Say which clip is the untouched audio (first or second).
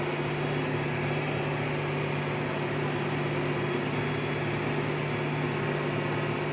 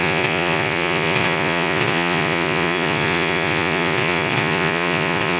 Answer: first